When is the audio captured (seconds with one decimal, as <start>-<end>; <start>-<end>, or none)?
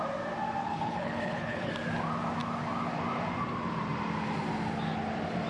0.0-0.6; 1.7-5.5